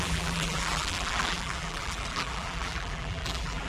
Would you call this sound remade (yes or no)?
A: yes